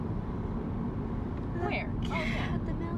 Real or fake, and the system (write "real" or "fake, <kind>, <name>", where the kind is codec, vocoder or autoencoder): real